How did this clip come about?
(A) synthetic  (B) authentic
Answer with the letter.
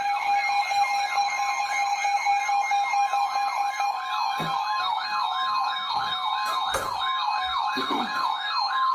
A